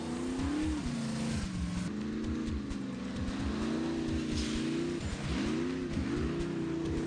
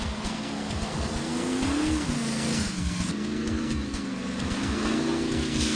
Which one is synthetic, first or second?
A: second